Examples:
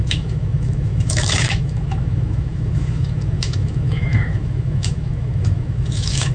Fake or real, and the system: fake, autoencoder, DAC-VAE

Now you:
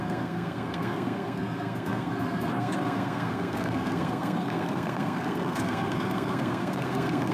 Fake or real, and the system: fake, codec, SNAC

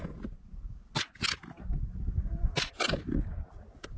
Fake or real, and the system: real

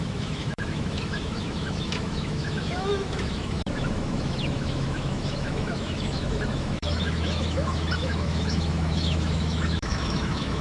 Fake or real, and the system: fake, autoencoder, DAC-VAE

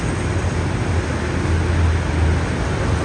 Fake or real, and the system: real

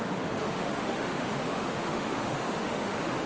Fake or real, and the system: fake, autoencoder, DAC-VAE